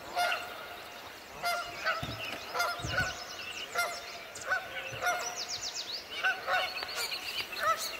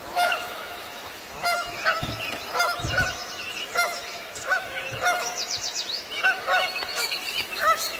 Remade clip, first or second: second